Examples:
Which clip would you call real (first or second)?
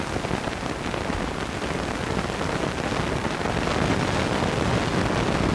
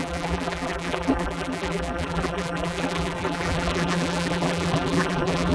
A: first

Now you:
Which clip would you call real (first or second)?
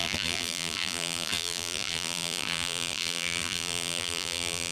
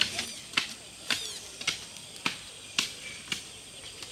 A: second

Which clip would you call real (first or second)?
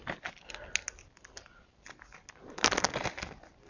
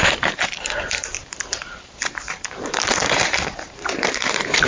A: first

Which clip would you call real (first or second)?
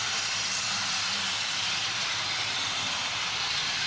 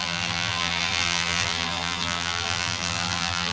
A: first